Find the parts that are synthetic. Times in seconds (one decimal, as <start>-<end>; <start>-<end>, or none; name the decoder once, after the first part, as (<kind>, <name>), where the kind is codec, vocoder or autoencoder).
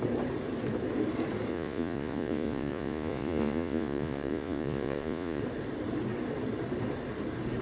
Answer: 1.5-5.4 (vocoder, Vocos)